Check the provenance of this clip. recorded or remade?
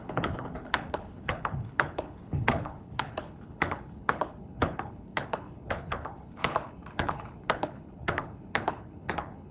remade